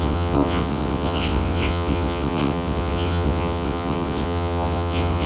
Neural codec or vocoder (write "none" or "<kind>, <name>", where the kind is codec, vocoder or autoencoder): vocoder, WaveNeXt